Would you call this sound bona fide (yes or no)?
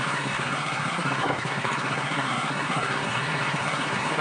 no